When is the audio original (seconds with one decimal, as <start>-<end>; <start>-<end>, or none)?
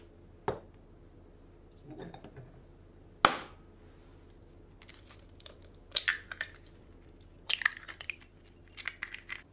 0.0-4.9; 5.6-6.1; 8.6-9.5